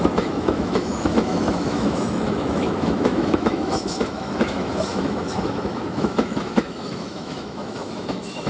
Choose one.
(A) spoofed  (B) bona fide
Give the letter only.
A